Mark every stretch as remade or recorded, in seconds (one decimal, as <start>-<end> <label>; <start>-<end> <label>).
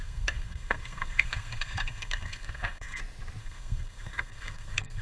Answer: 0.0-3.0 remade; 3.0-3.4 recorded; 3.4-5.0 remade